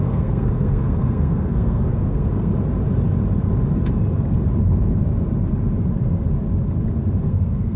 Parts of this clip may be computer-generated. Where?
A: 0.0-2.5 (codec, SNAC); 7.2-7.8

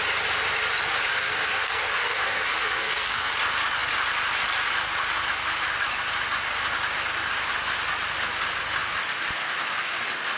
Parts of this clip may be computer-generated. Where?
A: 1.1-3.3 (codec, SNAC)

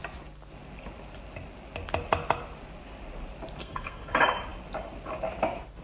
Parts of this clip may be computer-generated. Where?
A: 3.6-4.1 (codec, SNAC)